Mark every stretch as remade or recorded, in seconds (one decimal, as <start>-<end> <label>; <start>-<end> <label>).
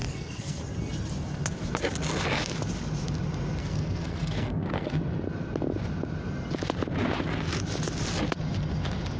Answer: 0.0-0.6 remade; 0.6-3.6 recorded; 3.6-5.0 remade; 5.0-9.2 recorded